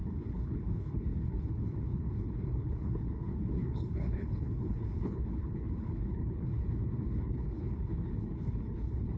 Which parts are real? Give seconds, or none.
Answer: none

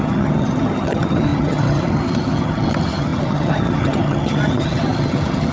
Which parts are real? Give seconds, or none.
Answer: none

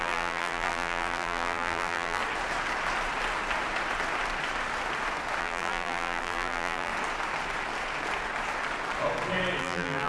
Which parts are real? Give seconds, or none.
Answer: 2.2-5.4; 6.9-9.6

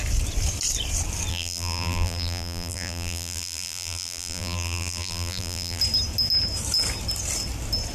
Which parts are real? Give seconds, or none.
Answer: 0.0-1.3; 5.8-7.9

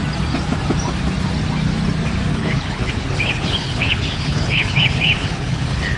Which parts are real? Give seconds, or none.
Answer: 0.0-2.3

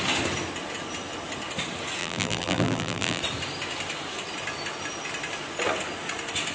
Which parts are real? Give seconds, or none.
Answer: 0.0-2.0; 3.2-6.5

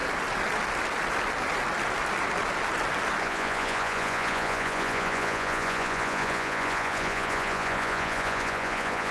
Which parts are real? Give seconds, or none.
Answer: 0.0-3.2

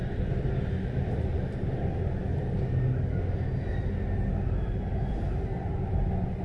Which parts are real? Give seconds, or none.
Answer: 0.0-6.4